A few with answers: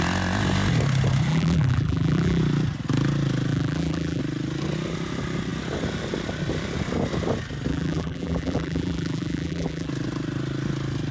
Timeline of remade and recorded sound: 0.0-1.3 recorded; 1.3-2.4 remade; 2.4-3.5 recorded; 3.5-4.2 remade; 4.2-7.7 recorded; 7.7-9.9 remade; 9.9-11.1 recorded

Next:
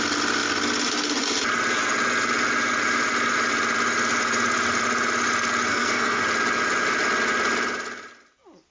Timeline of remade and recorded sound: 0.0-5.7 recorded; 5.7-6.2 remade; 6.2-8.7 recorded